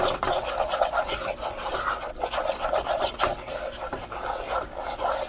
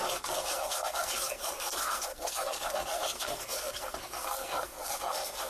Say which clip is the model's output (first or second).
second